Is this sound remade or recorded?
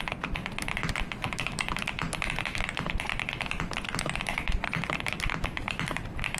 remade